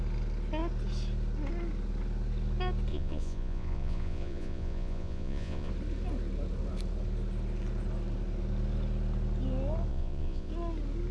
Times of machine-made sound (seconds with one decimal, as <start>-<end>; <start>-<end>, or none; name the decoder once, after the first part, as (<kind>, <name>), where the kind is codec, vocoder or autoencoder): 2.9-5.7 (vocoder, Vocos); 9.9-10.5